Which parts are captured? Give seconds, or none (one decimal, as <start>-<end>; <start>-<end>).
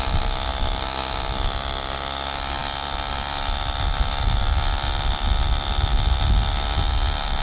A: 0.0-7.4